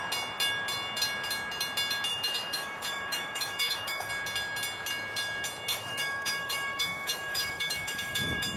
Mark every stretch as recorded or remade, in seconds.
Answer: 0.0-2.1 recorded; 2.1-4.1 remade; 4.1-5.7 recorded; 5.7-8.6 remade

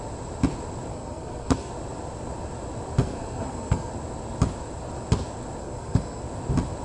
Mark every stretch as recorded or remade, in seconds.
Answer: 0.0-0.9 recorded; 0.9-1.7 remade; 1.7-3.0 recorded; 3.0-3.9 remade; 3.9-5.6 recorded; 5.6-6.2 remade; 6.2-6.8 recorded

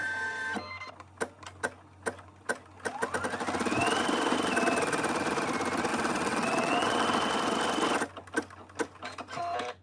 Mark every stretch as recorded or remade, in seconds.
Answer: 0.0-5.9 recorded; 5.9-7.1 remade; 7.1-9.8 recorded

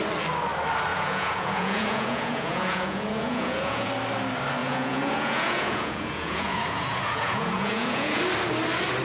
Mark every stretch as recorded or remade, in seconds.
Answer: 0.0-0.9 recorded; 0.9-3.9 remade; 3.9-4.6 recorded; 4.6-8.2 remade; 8.2-9.0 recorded

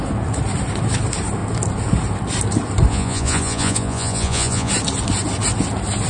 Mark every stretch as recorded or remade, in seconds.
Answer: 0.0-2.9 recorded; 2.9-4.7 remade; 4.7-6.1 recorded

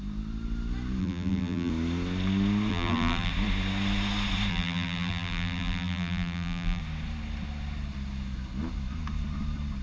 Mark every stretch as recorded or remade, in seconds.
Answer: 0.0-1.0 recorded; 1.0-1.7 remade; 1.7-2.7 recorded; 2.7-3.3 remade; 3.3-4.5 recorded; 4.5-6.8 remade; 6.8-9.8 recorded